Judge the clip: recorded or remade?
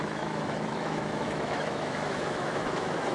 remade